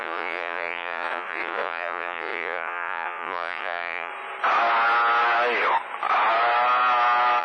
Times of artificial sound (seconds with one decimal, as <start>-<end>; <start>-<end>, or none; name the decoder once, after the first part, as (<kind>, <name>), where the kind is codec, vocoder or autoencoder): 0.0-4.1 (vocoder, Vocos)